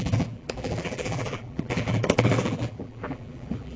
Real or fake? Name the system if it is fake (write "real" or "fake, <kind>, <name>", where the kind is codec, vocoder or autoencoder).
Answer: fake, vocoder, BigVGAN v2